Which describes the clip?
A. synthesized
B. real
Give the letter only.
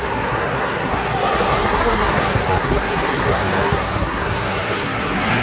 A